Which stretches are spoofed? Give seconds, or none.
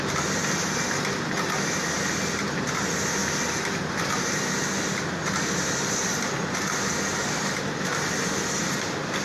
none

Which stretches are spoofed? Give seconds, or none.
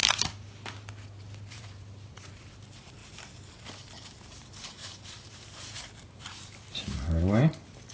1.5-3.0 (vocoder, BigVGAN v2); 3.6-7.9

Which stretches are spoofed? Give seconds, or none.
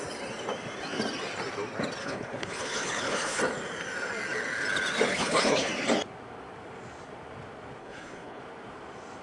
2.0-3.4 (codec, HILCodec); 5.1-5.7; 7.8-8.4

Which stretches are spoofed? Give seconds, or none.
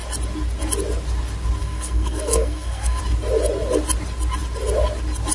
1.6-3.0 (codec, SNAC)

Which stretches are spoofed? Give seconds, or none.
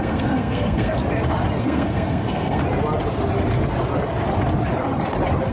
0.0-1.0 (codec, SNAC); 1.6-2.6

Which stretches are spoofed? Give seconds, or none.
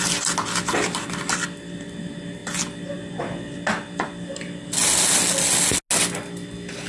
none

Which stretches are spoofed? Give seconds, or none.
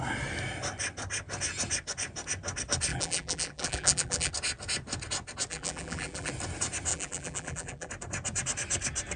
2.9-4.3 (vocoder, BigVGAN v2); 5.5-6.3; 6.9-7.9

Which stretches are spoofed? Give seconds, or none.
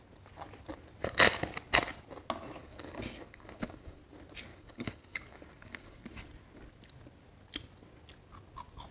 2.6-4.0 (codec, DAC); 4.5-6.0